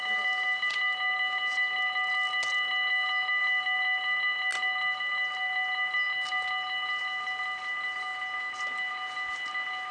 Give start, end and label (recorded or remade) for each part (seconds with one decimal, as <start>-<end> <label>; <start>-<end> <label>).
0.0-9.9 recorded